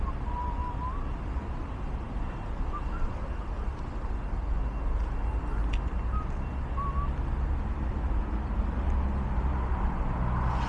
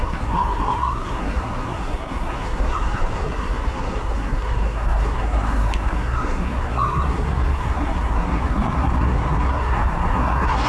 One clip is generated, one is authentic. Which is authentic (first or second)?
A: first